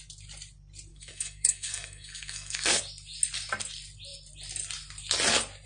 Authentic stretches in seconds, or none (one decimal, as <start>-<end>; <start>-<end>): 0.0-0.9; 2.8-5.7